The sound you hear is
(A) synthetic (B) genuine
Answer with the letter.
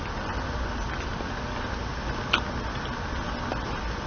B